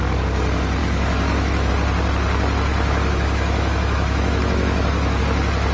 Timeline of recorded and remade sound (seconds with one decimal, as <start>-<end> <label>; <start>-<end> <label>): 0.0-0.8 recorded; 0.8-1.7 remade; 1.7-2.7 recorded; 2.7-5.2 remade; 5.2-5.7 recorded